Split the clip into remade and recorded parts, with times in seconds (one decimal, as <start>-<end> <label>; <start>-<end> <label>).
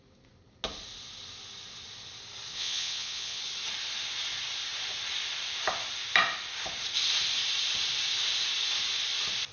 0.0-2.5 recorded; 2.5-3.4 remade; 3.4-9.5 recorded